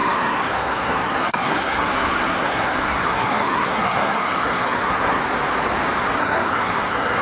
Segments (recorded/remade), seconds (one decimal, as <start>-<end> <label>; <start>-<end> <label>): 0.0-5.2 remade; 5.2-6.2 recorded; 6.2-7.2 remade